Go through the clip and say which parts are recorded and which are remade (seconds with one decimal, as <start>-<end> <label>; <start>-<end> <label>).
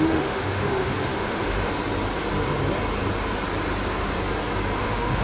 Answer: 0.0-1.7 remade; 1.7-4.8 recorded; 4.8-5.2 remade